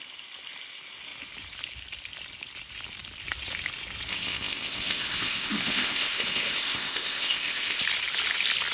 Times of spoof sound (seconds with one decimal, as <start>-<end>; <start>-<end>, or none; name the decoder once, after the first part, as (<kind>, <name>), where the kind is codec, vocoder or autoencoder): 4.1-7.8 (codec, ZipCodec)